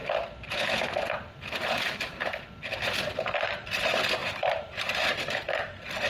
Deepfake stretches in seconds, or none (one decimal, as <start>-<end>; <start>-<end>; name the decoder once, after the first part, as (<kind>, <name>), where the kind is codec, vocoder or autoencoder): 4.2-5.2 (vocoder, BigVGAN v2)